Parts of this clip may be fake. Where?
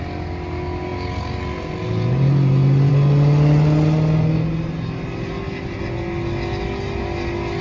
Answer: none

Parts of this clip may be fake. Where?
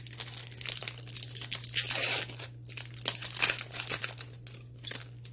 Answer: none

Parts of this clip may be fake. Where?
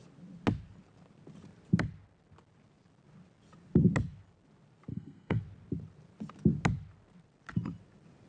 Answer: 4.9-5.4 (codec, SNAC)